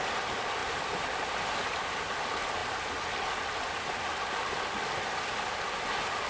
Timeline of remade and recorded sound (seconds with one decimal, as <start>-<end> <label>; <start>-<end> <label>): 0.0-6.3 recorded